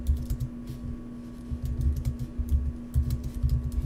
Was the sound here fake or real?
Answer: real